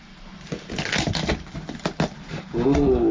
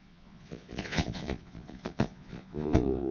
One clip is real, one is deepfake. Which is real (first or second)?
first